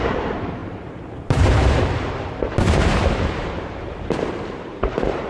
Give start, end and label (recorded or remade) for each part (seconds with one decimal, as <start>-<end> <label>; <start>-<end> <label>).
0.0-5.3 remade